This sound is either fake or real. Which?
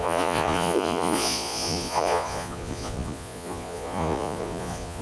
fake